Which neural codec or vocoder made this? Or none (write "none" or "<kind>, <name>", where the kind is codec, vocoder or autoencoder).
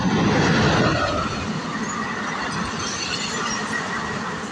none